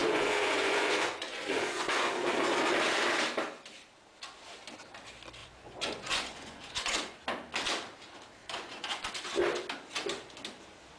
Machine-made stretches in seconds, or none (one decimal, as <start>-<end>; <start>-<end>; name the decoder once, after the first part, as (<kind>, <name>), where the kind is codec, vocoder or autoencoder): 0.0-2.1 (vocoder, Vocos); 5.4-7.2; 8.4-9.1

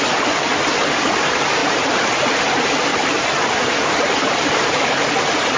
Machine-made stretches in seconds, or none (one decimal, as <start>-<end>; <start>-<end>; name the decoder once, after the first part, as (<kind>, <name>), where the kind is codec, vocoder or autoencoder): 1.6-2.4 (vocoder, BigVGAN v2); 2.9-5.1

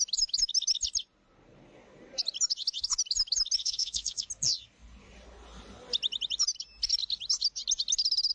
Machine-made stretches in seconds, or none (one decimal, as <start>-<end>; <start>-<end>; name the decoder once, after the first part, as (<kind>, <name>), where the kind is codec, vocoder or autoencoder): 3.6-4.3 (autoencoder, DAC-VAE)

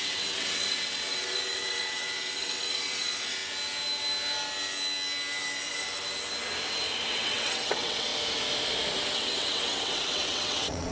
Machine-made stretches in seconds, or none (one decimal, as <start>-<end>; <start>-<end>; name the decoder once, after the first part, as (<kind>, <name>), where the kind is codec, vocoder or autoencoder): 0.0-3.4 (vocoder, WaveNeXt); 7.1-8.1; 9.1-10.9